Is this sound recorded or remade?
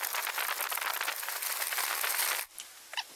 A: recorded